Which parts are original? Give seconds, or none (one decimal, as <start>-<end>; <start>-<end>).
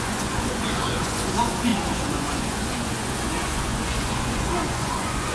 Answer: none